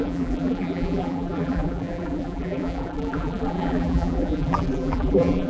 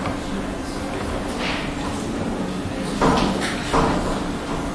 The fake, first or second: first